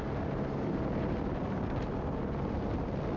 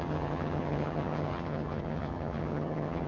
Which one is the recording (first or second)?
first